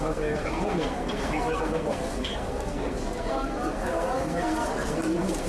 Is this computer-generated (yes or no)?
yes